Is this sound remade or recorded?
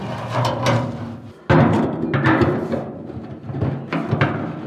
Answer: recorded